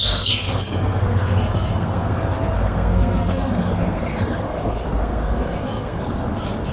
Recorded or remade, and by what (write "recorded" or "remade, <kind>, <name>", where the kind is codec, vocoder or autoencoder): remade, codec, SNAC